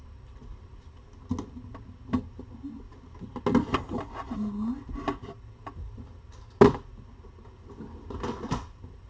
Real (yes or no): yes